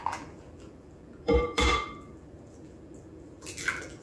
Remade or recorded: remade